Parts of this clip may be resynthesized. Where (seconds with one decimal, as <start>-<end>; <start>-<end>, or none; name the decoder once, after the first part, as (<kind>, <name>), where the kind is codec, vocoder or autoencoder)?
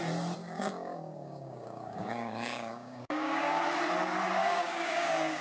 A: 0.4-3.6 (codec, DAC); 4.4-5.4